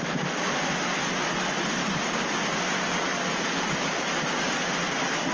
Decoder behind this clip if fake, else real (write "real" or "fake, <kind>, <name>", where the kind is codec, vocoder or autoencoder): real